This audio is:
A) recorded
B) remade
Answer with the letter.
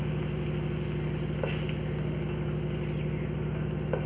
A